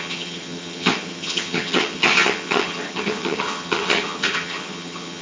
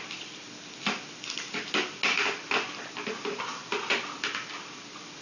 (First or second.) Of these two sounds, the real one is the second